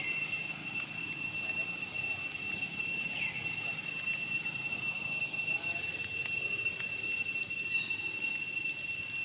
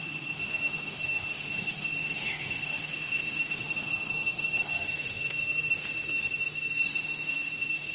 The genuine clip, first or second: first